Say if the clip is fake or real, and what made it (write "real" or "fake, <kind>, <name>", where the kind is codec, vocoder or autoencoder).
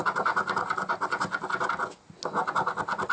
real